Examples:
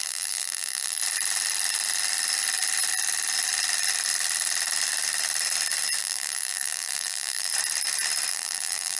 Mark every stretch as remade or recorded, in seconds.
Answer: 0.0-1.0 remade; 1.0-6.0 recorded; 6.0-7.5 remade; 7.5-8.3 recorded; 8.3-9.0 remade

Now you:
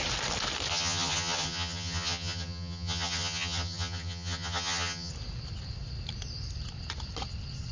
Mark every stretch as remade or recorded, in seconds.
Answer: 0.0-0.7 recorded; 0.7-5.1 remade; 5.1-7.7 recorded

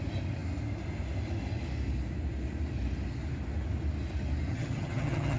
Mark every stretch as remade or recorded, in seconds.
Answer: 0.0-4.5 recorded; 4.5-5.4 remade